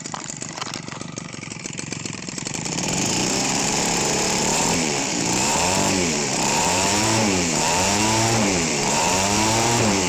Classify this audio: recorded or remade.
remade